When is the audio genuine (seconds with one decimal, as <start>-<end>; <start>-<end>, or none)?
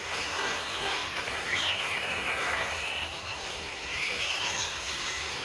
none